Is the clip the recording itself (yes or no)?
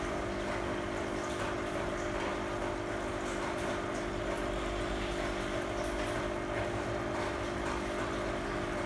yes